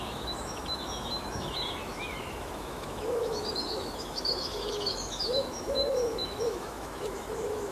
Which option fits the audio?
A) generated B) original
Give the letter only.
A